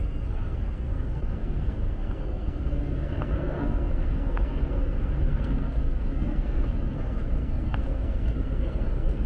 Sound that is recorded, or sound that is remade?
remade